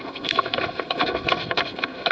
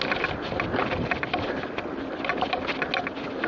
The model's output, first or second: first